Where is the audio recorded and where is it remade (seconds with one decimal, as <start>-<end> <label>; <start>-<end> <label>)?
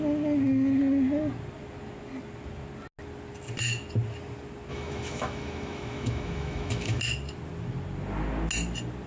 0.0-4.7 recorded; 4.7-7.0 remade; 7.0-9.1 recorded